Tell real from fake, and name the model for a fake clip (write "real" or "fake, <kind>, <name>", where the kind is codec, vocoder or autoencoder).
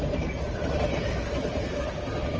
real